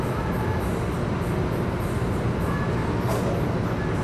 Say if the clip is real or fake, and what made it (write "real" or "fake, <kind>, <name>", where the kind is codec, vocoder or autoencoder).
real